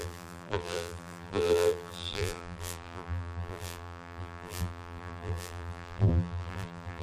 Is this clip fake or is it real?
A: fake